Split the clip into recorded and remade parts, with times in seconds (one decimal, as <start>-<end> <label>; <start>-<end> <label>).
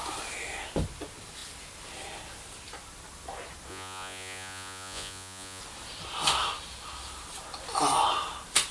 0.0-3.7 recorded; 3.7-5.6 remade; 5.6-8.7 recorded